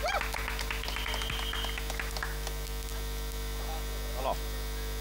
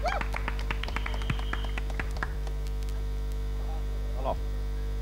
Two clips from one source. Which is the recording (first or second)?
first